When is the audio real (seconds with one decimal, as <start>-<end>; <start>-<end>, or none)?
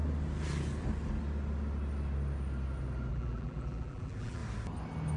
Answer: 0.0-3.1; 4.4-5.2